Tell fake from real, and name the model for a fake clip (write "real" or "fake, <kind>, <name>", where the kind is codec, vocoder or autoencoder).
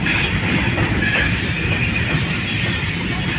fake, vocoder, BigVGAN v2